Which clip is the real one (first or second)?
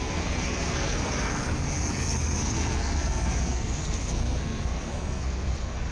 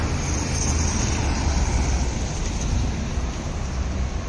second